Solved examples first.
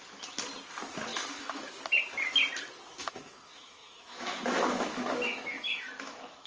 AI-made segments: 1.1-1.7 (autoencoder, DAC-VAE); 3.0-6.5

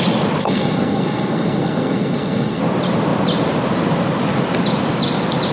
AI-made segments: 0.4-2.6 (codec, SNAC)

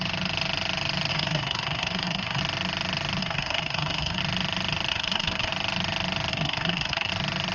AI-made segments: 1.1-2.4 (codec, SNAC); 3.2-4.2; 4.9-5.5; 6.3-7.1

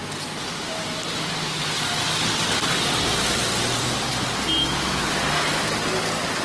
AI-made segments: 4.6-5.1 (autoencoder, DAC-VAE)

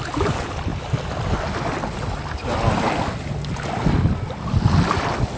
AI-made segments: none

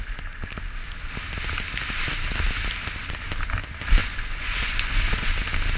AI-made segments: 4.0-5.3 (vocoder, Vocos)

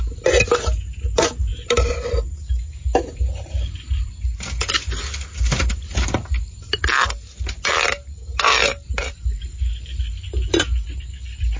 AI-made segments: 1.5-4.1 (vocoder, BigVGAN v2); 8.7-9.6

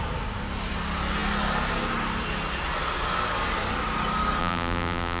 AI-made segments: 4.4-5.2 (vocoder, BigVGAN v2)